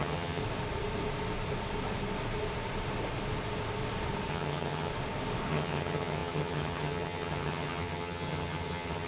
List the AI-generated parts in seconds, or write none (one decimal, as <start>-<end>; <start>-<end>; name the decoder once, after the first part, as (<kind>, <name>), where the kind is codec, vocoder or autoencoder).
0.0-0.4 (vocoder, HiFi-GAN); 4.3-4.9; 5.5-9.1